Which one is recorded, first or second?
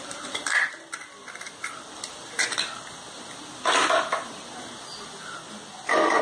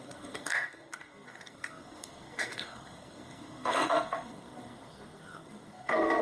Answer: first